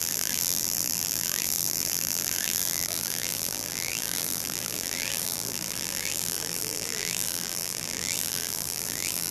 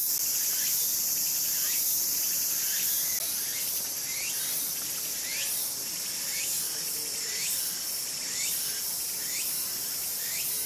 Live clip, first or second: second